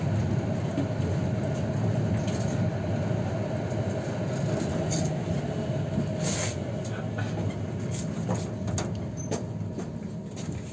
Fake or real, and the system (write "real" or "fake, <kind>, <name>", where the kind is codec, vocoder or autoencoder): real